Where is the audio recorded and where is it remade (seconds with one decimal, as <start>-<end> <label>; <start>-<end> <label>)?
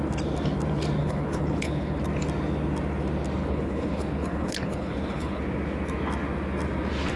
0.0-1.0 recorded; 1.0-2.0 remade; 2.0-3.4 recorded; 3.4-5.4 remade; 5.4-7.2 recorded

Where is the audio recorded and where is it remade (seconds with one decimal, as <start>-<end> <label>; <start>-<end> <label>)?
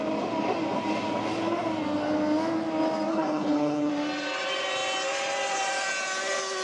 0.0-3.1 recorded; 3.1-3.9 remade; 3.9-6.6 recorded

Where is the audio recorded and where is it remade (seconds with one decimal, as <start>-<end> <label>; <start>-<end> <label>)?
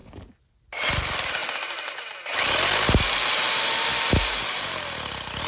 0.0-5.5 recorded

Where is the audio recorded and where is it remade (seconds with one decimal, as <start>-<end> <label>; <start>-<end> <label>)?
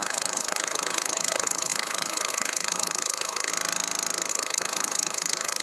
0.0-3.5 remade; 3.5-4.3 recorded; 4.3-5.6 remade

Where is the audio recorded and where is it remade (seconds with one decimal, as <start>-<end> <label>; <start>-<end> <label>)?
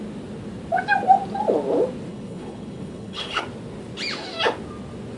0.0-2.1 recorded; 2.1-3.4 remade; 3.4-5.2 recorded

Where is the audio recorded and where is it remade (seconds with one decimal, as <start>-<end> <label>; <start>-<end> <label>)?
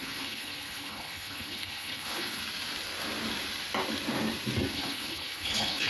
0.0-2.4 remade; 2.4-4.7 recorded; 4.7-5.9 remade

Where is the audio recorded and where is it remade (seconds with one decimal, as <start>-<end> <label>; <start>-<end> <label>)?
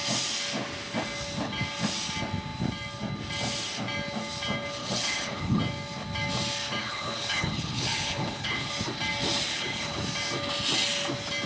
0.0-4.8 recorded; 4.8-5.6 remade; 5.6-6.8 recorded; 6.8-8.7 remade; 8.7-9.5 recorded; 9.5-10.0 remade; 10.0-11.5 recorded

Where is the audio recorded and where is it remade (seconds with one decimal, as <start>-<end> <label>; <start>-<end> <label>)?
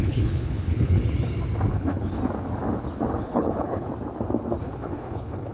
0.0-1.0 remade; 1.0-1.7 recorded; 1.7-2.2 remade; 2.2-3.2 recorded; 3.2-3.9 remade; 3.9-4.6 recorded; 4.6-5.5 remade